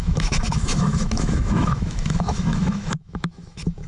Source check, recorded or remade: remade